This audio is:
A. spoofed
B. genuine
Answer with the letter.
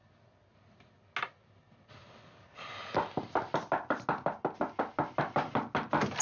B